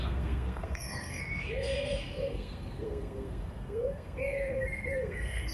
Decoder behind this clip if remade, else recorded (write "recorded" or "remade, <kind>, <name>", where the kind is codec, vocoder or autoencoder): remade, codec, SNAC